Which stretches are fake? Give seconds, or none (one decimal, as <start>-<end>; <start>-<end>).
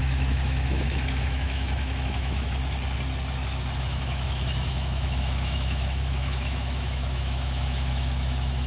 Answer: 0.0-2.6; 3.8-8.7